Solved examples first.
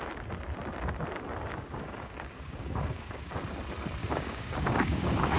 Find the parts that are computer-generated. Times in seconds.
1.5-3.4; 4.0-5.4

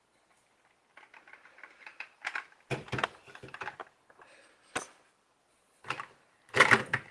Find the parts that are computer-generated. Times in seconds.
none

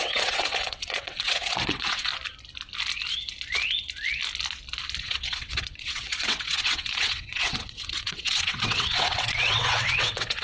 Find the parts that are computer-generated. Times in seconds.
0.0-2.1; 5.0-10.4

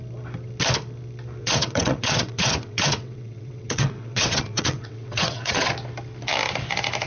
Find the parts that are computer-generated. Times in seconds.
1.4-5.7

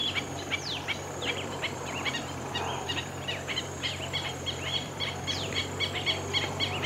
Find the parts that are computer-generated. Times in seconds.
0.0-5.6

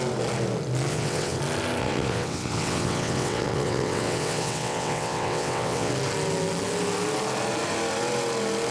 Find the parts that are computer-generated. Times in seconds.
0.9-1.4; 1.8-5.9

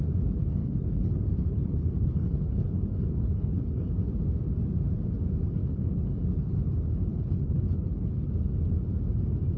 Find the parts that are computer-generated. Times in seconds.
0.6-3.9; 5.6-6.1; 7.1-8.3